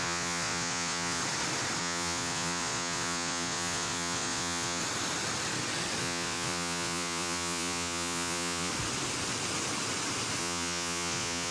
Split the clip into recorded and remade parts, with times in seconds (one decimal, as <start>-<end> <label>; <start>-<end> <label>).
0.0-1.2 remade; 1.2-1.8 recorded; 1.8-4.8 remade; 4.8-6.0 recorded; 6.0-8.7 remade; 8.7-10.4 recorded; 10.4-11.5 remade